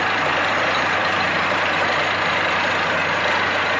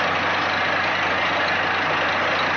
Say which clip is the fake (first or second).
first